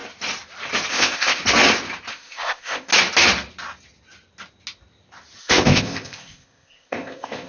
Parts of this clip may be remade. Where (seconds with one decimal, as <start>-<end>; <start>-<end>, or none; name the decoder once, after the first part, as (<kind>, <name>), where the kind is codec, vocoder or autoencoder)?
0.9-1.4 (codec, ZipCodec); 2.1-2.9; 5.4-7.5